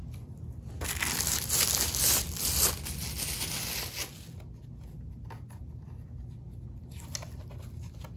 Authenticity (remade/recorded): recorded